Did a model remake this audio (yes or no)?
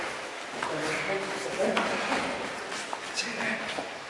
no